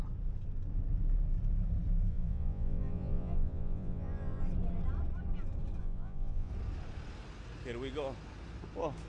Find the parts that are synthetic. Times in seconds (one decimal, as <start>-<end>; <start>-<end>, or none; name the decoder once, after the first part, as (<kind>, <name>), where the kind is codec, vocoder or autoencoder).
2.1-4.4 (vocoder, Vocos); 5.8-6.5